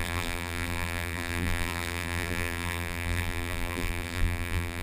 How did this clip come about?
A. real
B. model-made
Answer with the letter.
B